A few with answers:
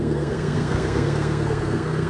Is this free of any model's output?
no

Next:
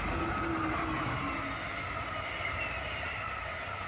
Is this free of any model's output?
yes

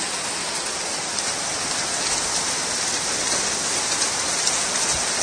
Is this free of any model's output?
yes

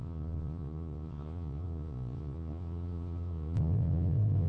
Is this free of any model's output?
no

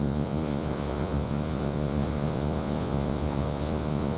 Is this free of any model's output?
no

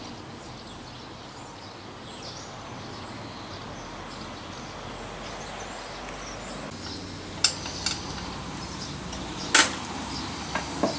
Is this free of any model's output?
yes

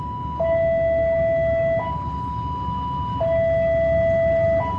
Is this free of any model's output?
yes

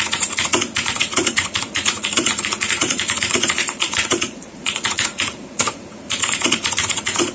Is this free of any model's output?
no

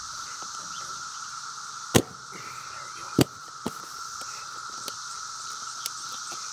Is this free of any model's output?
no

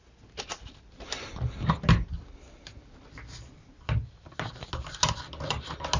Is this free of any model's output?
yes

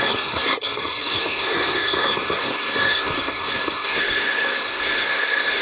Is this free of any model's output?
no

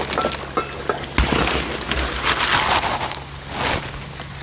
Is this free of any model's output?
yes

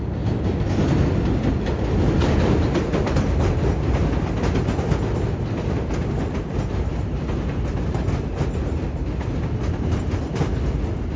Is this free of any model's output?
yes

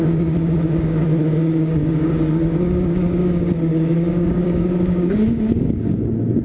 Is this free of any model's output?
no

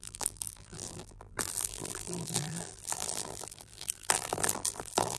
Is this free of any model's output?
no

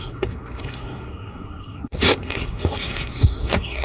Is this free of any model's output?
no